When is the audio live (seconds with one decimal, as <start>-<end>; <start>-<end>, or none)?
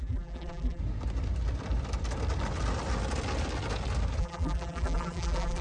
0.8-4.2